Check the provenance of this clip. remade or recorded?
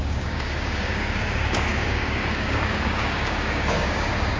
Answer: remade